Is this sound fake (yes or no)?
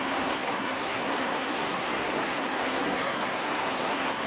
yes